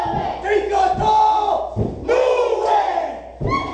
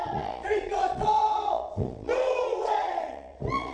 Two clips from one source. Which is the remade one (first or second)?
second